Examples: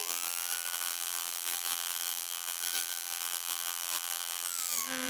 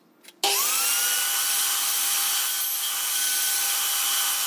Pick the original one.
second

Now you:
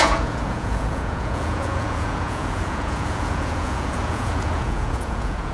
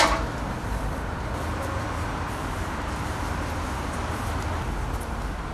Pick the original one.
second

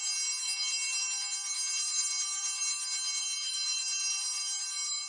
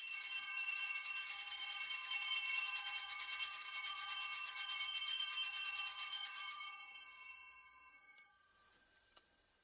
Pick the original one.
first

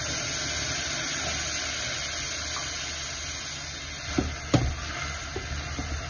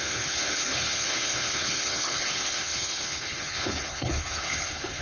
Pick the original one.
first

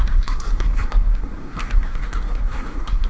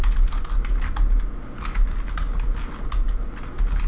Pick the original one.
second